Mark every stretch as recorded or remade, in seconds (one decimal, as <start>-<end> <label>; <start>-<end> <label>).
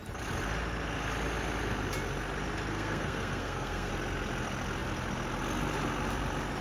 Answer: 0.0-2.7 recorded; 2.7-3.9 remade; 3.9-6.6 recorded